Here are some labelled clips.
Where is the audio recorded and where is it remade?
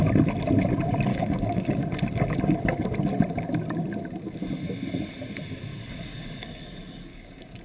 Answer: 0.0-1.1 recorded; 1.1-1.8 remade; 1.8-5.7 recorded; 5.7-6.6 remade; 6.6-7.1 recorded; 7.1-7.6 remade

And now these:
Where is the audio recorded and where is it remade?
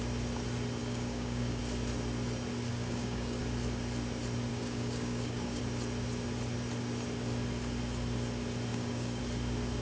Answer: 0.0-0.8 recorded; 0.8-1.6 remade; 1.6-2.7 recorded; 2.7-3.4 remade; 3.4-4.5 recorded; 4.5-5.6 remade; 5.6-8.7 recorded; 8.7-9.2 remade; 9.2-9.8 recorded